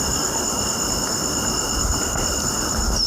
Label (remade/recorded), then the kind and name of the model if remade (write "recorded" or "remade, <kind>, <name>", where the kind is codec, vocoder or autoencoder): recorded